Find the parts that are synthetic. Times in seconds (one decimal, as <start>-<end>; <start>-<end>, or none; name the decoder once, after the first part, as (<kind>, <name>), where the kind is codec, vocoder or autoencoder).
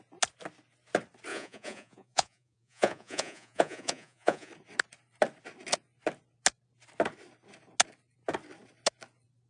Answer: 1.3-4.5 (vocoder, Vocos)